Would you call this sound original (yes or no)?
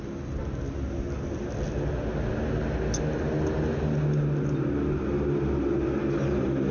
yes